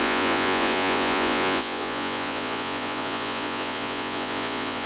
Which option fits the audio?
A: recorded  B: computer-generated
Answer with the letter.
B